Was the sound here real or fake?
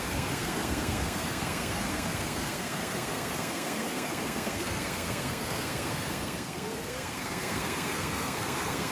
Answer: fake